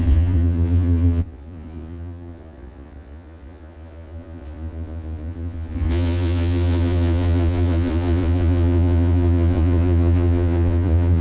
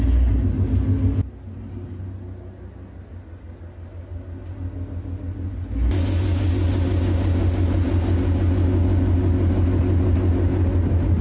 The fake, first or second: first